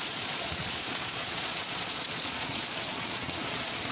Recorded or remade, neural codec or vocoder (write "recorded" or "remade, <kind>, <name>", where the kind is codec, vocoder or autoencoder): remade, vocoder, Vocos